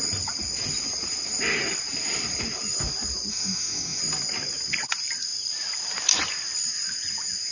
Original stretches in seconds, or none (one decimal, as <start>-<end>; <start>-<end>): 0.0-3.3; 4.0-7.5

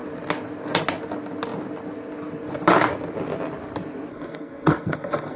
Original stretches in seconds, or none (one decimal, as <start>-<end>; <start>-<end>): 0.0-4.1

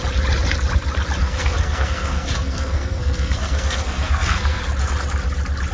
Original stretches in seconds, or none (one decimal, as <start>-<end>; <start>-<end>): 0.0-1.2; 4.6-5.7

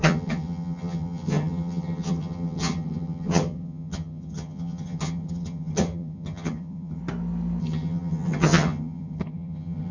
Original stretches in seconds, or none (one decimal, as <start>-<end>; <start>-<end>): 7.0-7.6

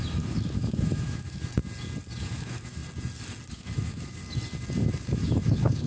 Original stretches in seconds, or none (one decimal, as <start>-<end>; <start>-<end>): 1.6-2.2; 2.8-3.5; 4.2-4.8